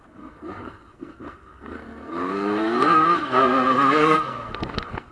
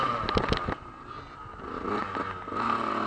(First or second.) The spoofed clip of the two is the first